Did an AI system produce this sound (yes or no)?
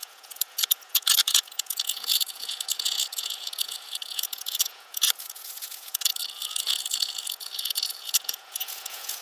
yes